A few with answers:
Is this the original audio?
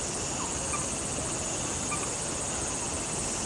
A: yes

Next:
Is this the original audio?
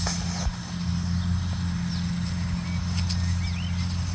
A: yes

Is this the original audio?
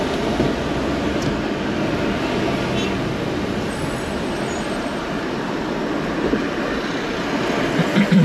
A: yes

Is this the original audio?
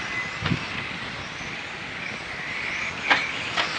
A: yes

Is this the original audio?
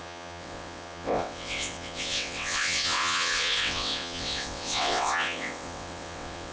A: no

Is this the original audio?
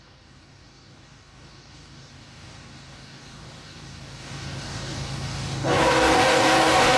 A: no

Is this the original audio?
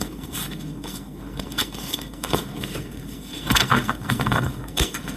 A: no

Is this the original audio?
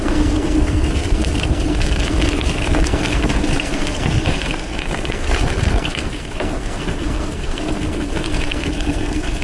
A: no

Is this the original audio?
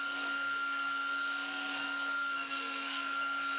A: no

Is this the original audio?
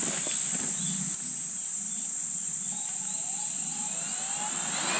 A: yes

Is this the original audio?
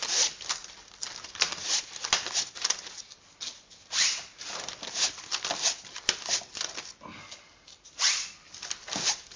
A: yes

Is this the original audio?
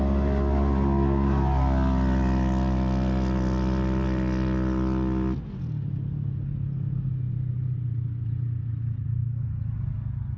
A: yes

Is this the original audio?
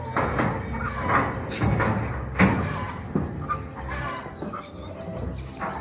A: yes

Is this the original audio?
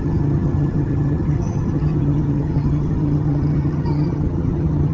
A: no